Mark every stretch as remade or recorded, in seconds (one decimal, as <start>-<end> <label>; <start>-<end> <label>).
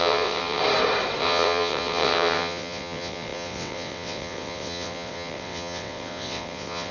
0.0-0.6 remade; 0.6-1.2 recorded; 1.2-6.9 remade